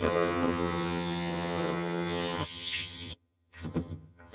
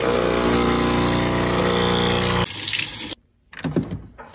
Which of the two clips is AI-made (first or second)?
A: first